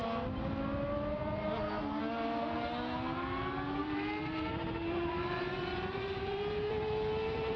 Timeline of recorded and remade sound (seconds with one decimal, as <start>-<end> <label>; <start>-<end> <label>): 0.0-3.8 recorded; 3.8-7.6 remade